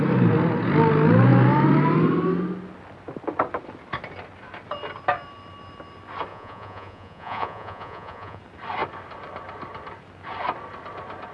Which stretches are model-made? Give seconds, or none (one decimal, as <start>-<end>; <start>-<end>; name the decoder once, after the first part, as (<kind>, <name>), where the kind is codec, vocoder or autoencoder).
6.3-8.4 (vocoder, Vocos)